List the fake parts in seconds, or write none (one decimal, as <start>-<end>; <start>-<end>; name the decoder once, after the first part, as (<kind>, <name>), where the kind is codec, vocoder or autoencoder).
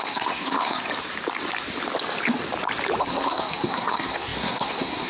0.0-0.8 (codec, SNAC); 3.0-5.1